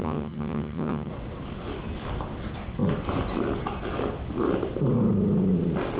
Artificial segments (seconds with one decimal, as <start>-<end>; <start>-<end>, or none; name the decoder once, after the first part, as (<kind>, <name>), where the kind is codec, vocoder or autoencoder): 0.0-1.1 (vocoder, HiFi-GAN)